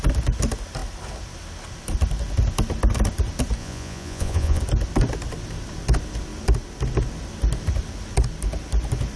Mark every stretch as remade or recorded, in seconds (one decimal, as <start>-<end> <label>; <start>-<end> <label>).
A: 0.0-3.6 recorded; 3.6-4.6 remade; 4.6-9.2 recorded